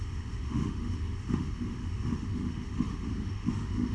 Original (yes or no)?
no